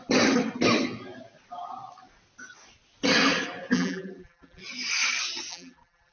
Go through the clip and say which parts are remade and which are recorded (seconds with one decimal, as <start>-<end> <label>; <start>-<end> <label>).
0.0-3.7 recorded; 3.7-4.6 remade; 4.6-5.5 recorded; 5.5-6.1 remade